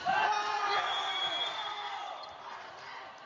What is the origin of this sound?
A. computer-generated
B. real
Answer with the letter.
A